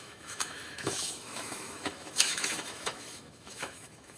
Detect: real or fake fake